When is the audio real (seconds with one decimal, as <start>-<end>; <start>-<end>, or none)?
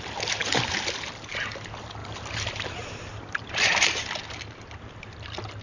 0.0-2.0; 4.2-5.6